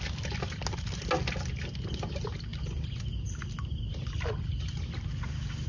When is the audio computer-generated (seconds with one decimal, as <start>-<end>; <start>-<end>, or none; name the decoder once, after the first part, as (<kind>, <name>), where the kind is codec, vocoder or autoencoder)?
none